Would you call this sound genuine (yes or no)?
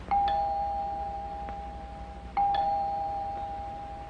yes